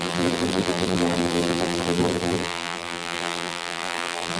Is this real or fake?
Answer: fake